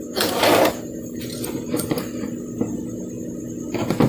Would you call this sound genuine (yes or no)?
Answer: yes